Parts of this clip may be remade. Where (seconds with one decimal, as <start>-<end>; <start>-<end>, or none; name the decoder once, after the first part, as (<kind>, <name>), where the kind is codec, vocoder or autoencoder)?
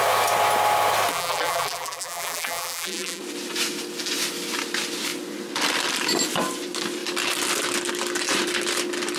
1.1-3.2 (vocoder, BigVGAN v2)